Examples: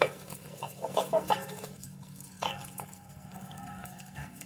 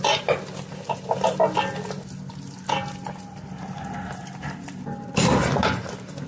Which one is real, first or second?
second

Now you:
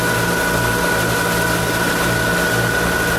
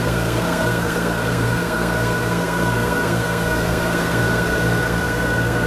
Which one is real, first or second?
first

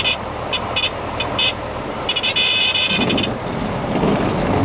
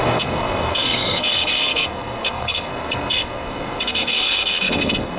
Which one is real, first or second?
first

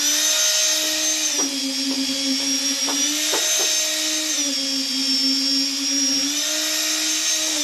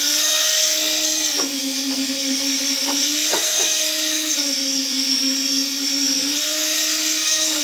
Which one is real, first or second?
first